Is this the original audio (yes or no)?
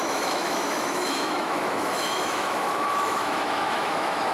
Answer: no